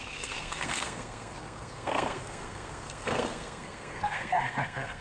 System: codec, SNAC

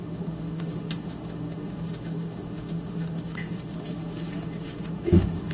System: autoencoder, DAC-VAE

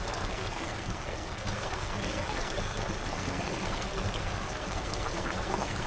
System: codec, SNAC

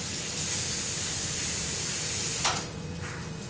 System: none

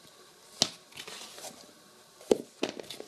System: none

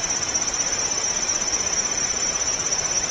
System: none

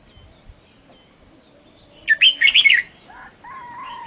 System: none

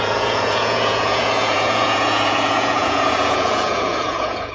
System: vocoder, Vocos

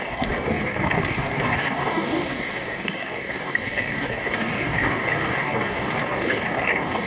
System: codec, DAC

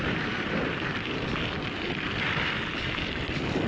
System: vocoder, BigVGAN v2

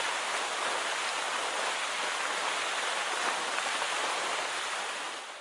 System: none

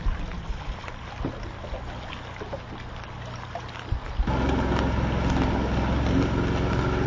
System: none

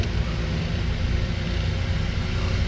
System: none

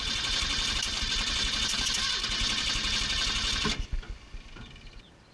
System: none